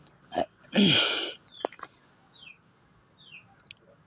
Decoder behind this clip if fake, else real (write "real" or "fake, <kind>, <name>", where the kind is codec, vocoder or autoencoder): real